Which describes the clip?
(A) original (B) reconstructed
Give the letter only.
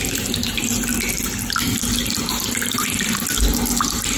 A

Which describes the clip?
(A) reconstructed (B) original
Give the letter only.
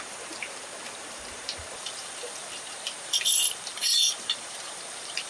A